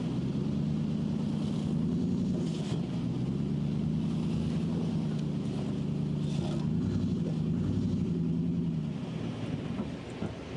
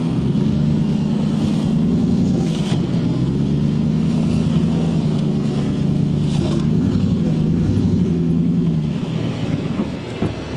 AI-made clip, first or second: second